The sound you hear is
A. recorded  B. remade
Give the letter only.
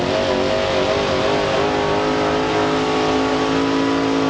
A